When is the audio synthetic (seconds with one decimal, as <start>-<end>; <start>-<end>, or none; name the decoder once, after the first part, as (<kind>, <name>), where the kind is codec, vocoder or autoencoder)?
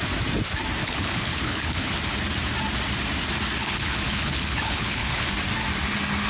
0.8-1.9 (codec, HILCodec); 3.6-5.3